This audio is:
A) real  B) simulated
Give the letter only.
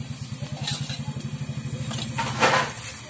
A